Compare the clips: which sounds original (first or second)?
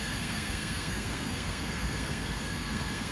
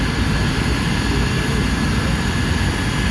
second